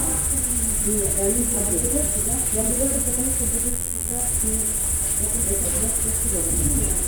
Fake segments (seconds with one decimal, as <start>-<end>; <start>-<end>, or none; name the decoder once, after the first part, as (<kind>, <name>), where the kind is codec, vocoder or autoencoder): 3.7-4.2 (vocoder, BigVGAN v2)